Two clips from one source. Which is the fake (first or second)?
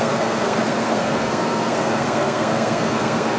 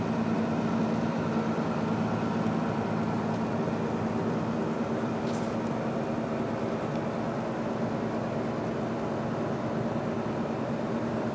first